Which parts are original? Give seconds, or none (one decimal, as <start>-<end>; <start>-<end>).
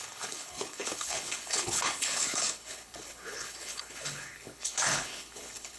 none